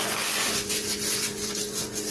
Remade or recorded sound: remade